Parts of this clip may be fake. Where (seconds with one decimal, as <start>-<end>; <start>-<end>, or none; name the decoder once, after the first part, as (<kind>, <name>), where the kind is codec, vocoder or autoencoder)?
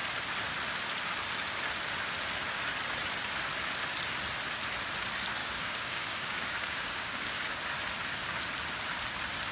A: 5.4-7.5 (codec, DAC)